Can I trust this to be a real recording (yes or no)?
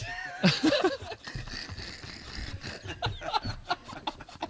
yes